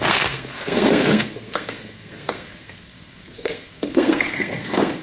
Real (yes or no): no